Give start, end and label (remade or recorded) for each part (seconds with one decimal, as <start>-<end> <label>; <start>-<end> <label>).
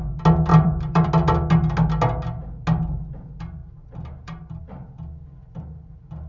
0.0-0.5 recorded; 0.5-1.1 remade; 1.1-3.6 recorded; 3.6-4.6 remade; 4.6-5.4 recorded; 5.4-6.3 remade